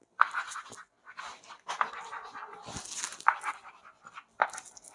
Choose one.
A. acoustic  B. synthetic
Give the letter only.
A